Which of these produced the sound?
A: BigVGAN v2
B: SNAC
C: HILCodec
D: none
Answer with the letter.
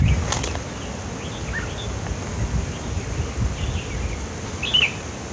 D